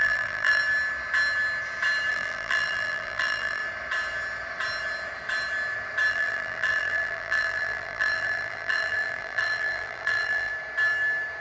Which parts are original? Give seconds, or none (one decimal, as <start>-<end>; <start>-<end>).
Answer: 0.6-2.1; 3.6-6.1; 10.5-11.4